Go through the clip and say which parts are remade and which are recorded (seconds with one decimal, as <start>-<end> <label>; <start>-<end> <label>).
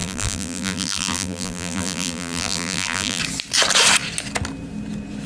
0.0-3.2 remade; 3.2-5.3 recorded